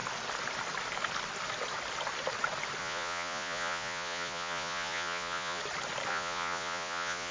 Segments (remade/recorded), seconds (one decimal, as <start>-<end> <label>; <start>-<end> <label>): 0.0-2.8 recorded; 2.8-5.6 remade; 5.6-6.1 recorded; 6.1-7.3 remade